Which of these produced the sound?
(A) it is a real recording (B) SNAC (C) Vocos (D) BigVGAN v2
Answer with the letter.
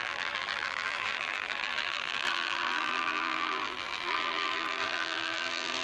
D